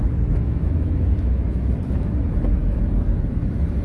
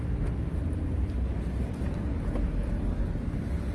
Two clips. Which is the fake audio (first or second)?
first